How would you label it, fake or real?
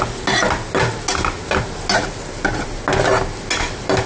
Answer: real